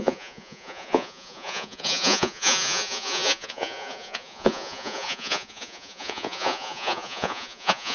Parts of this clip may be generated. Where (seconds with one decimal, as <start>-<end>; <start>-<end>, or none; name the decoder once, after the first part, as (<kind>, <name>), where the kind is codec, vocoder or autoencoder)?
0.0-7.9 (vocoder, Vocos)